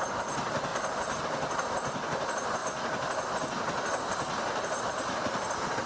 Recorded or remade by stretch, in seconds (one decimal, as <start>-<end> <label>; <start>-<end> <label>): 0.0-5.9 recorded